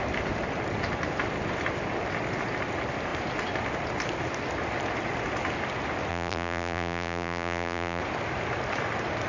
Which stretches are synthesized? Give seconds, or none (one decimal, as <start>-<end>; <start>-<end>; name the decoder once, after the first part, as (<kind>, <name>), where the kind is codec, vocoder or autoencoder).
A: 6.1-8.0 (vocoder, BigVGAN v2)